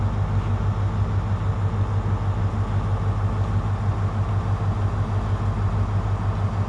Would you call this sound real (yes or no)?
yes